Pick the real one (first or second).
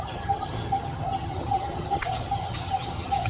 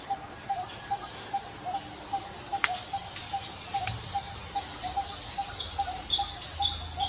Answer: second